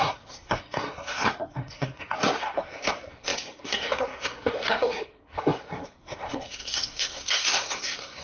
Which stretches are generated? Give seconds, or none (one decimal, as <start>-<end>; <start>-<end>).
0.0-8.2